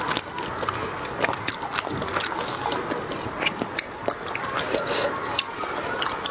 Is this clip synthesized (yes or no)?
no